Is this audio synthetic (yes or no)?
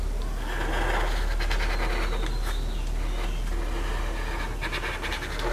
no